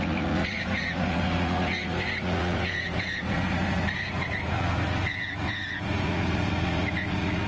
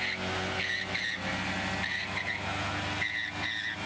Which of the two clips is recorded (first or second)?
second